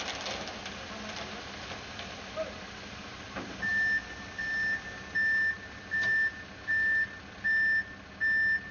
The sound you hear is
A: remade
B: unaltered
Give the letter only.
B